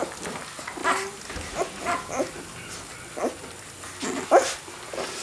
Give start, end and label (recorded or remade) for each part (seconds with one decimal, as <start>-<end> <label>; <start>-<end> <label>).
0.0-5.2 recorded